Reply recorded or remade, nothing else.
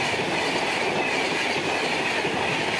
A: recorded